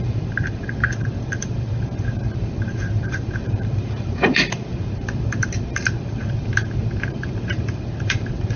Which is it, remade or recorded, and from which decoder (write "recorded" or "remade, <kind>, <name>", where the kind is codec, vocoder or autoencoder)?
remade, vocoder, BigVGAN v2